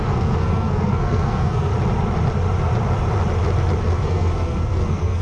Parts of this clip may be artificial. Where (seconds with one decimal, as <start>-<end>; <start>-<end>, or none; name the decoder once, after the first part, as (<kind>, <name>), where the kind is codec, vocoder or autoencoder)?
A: 0.0-1.7 (codec, SNAC); 3.8-5.2